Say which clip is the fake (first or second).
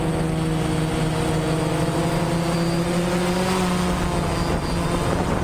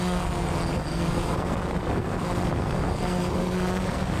second